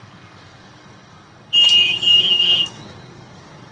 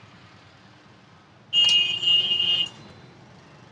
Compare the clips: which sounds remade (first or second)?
first